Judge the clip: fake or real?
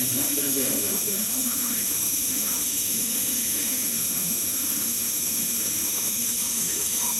fake